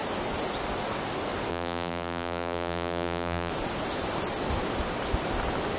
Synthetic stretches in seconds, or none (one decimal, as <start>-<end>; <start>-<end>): 1.5-3.5